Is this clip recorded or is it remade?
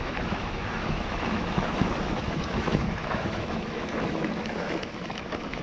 remade